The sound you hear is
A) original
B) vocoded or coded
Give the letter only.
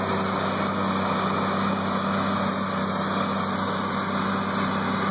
A